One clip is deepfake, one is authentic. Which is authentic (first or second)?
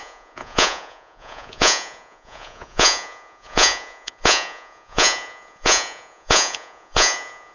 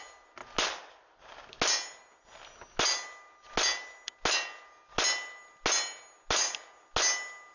second